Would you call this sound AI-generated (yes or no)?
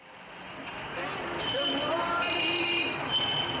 no